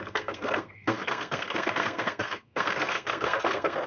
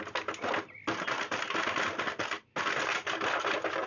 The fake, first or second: first